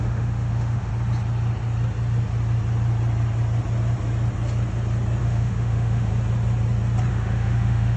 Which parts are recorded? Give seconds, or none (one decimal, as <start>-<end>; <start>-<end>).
0.9-5.2; 6.1-7.1